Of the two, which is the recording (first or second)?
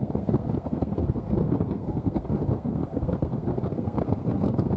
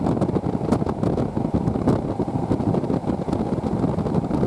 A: second